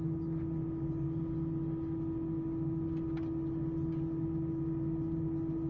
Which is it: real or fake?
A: real